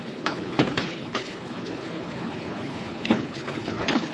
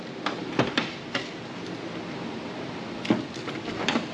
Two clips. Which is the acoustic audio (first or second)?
second